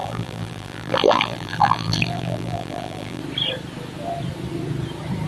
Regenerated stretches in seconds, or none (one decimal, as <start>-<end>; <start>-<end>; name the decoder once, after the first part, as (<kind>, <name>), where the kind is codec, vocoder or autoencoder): 0.0-3.2 (vocoder, BigVGAN v2)